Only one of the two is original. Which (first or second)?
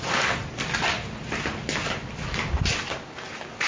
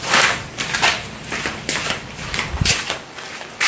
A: first